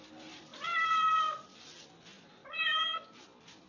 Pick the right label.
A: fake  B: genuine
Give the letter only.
B